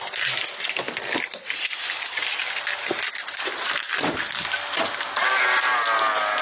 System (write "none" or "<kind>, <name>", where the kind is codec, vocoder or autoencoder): none